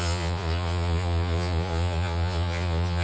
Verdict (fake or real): fake